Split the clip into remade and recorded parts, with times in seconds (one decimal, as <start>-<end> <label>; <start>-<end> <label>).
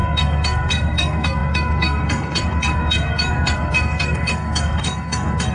0.0-5.5 remade